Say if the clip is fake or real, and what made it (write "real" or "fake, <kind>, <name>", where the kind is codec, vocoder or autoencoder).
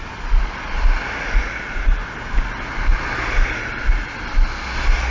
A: real